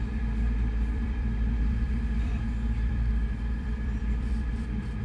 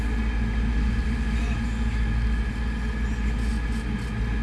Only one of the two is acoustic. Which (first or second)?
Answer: second